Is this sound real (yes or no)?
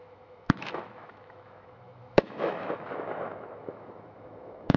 no